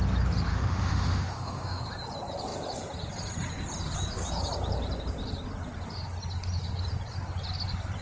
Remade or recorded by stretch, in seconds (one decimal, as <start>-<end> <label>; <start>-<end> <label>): 0.0-0.5 recorded; 0.5-1.8 remade; 1.8-8.0 recorded

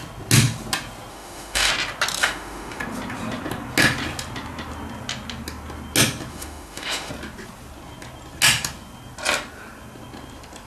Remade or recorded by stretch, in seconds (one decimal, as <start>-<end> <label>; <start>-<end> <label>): 0.0-1.1 recorded; 1.1-1.7 remade; 1.7-2.2 recorded; 2.2-2.8 remade; 2.8-6.3 recorded; 6.3-7.1 remade; 7.1-10.7 recorded

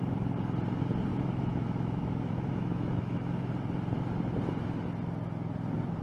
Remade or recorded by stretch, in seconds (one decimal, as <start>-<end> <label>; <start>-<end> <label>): 0.0-1.1 recorded; 1.1-3.5 remade; 3.5-6.0 recorded

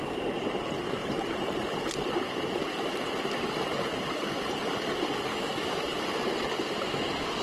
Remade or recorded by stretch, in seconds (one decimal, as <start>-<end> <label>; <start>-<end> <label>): 0.0-5.3 recorded; 5.3-5.8 remade; 5.8-7.4 recorded